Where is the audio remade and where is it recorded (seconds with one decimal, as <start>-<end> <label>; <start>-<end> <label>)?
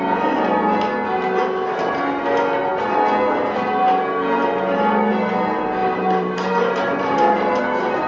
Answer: 0.0-5.8 recorded; 5.8-7.6 remade; 7.6-8.1 recorded